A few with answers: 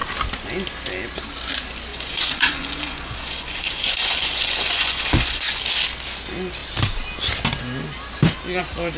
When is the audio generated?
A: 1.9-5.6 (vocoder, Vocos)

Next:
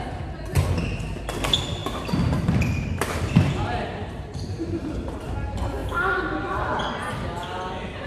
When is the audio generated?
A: 1.8-5.3 (vocoder, BigVGAN v2)

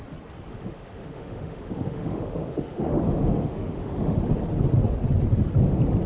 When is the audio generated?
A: 0.5-4.2 (autoencoder, DAC-VAE)